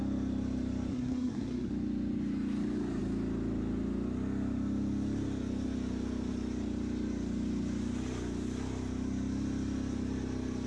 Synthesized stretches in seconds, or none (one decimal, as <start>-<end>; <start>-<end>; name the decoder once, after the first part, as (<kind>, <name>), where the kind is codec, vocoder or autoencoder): 0.9-1.7 (codec, SNAC)